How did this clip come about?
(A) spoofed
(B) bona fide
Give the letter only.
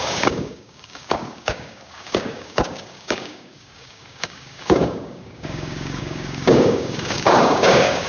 A